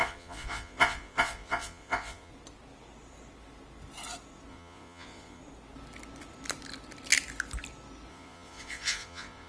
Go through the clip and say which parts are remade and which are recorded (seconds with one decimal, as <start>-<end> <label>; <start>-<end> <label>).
0.0-2.3 remade; 2.3-4.5 recorded; 4.5-5.4 remade; 5.4-8.1 recorded; 8.1-9.5 remade